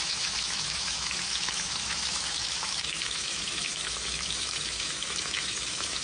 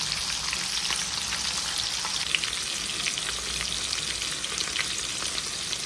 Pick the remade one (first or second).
first